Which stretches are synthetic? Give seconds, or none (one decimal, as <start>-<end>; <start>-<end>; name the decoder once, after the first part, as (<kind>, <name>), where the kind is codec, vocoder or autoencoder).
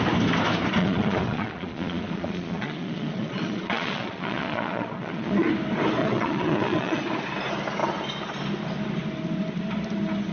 0.8-5.5 (vocoder, Vocos); 6.0-7.0